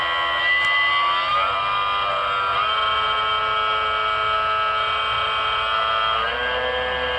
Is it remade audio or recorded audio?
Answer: recorded